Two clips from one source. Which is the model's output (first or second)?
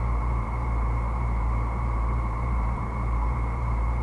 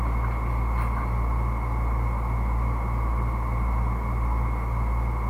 first